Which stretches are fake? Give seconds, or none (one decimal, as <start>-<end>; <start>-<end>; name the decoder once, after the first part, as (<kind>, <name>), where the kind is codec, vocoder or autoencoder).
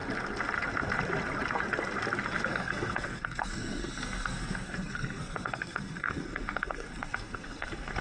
2.5-8.0 (codec, SNAC)